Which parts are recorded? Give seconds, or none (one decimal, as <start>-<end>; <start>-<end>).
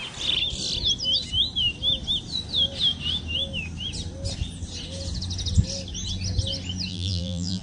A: 0.0-6.9